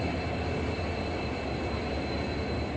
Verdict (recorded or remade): recorded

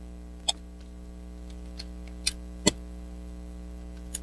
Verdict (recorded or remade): recorded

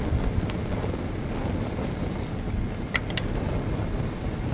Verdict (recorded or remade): recorded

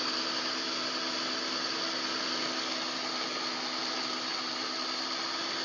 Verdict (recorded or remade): recorded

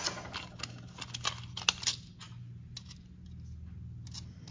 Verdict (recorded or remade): recorded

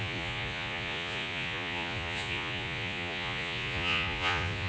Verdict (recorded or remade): remade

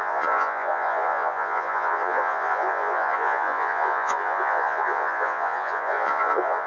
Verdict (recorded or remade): remade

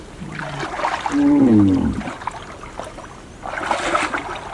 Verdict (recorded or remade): recorded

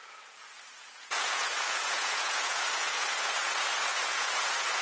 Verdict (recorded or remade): remade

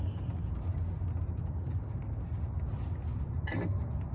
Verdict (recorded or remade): recorded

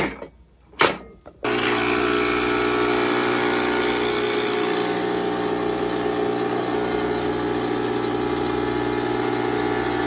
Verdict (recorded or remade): recorded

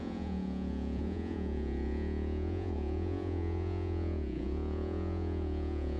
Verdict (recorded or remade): remade